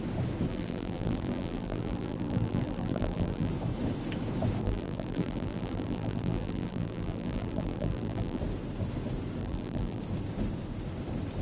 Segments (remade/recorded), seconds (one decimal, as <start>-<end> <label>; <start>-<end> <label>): 0.0-0.5 recorded; 0.5-3.5 remade; 3.5-4.6 recorded; 4.6-8.4 remade; 8.4-9.4 recorded; 9.4-10.0 remade; 10.0-11.4 recorded